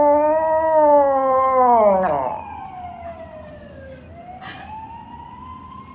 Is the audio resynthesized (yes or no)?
no